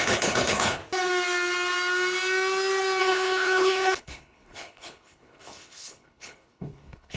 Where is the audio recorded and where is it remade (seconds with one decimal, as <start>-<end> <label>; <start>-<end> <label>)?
0.0-0.8 remade; 0.8-3.0 recorded; 3.0-7.2 remade